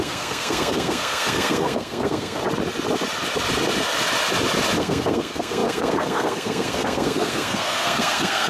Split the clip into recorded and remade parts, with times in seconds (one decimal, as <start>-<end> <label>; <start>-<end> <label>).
0.0-2.4 remade; 2.4-4.8 recorded; 4.8-8.5 remade